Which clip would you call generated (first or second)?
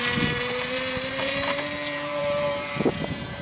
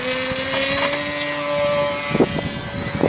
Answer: first